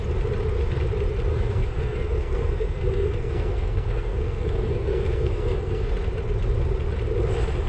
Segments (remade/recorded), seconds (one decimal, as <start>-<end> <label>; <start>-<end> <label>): 0.0-1.3 recorded; 1.3-5.9 remade; 5.9-7.7 recorded